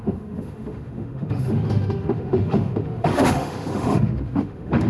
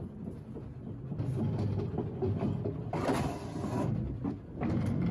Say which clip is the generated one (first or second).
first